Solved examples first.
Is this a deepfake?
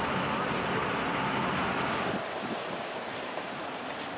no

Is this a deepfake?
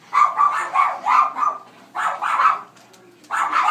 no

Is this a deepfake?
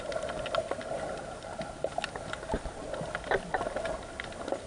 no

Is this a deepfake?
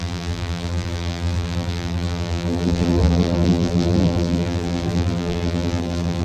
yes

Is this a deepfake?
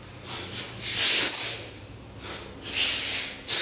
no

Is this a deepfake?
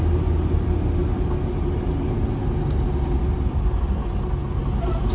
no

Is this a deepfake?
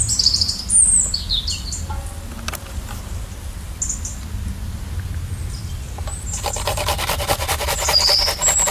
no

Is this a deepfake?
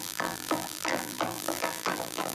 yes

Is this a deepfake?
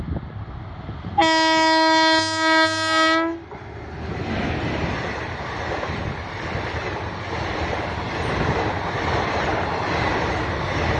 no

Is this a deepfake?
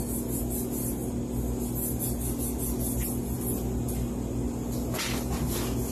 no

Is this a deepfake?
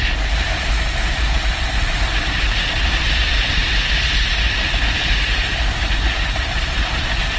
yes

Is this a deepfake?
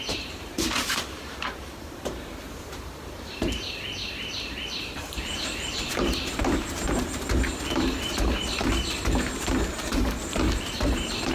yes